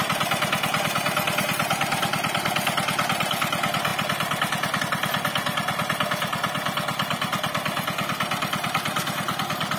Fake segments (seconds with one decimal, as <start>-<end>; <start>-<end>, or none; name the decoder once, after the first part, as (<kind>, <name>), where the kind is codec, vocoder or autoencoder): none